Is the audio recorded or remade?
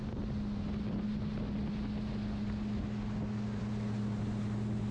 recorded